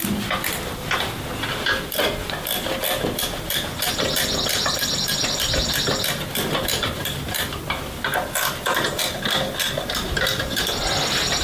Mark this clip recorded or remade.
remade